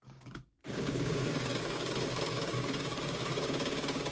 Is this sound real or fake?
fake